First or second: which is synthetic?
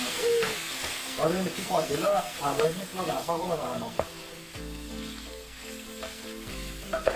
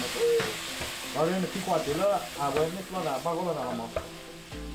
first